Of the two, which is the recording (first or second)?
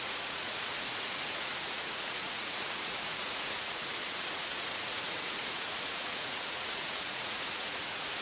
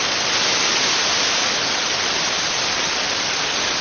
second